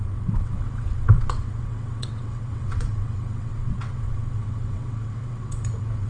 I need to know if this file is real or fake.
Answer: fake